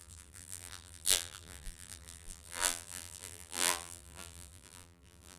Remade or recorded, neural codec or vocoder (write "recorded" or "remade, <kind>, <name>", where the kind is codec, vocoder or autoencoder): remade, vocoder, BigVGAN v2